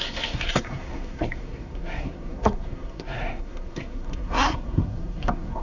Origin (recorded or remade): remade